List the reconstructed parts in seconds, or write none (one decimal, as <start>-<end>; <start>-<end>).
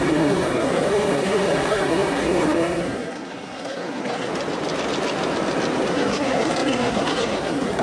0.0-4.3; 5.9-7.8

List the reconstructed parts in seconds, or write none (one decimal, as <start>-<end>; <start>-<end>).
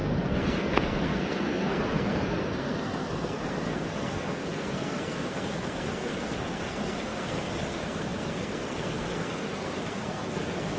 0.0-10.8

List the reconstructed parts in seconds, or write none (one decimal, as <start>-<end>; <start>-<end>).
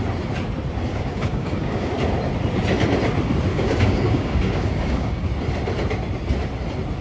0.9-1.9; 3.5-5.3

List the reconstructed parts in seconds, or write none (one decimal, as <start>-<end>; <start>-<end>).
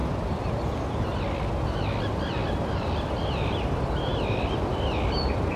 none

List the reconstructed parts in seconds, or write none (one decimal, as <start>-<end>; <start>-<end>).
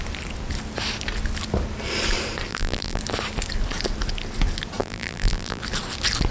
2.5-3.0; 4.8-5.6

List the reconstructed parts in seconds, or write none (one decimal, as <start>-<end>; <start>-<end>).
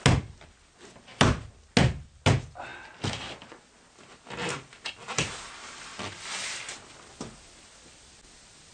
none